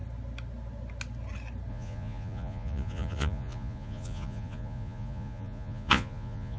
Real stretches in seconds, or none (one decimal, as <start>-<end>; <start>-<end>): 0.0-1.7